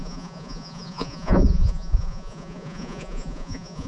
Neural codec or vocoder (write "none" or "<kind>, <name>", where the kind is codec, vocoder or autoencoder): vocoder, Vocos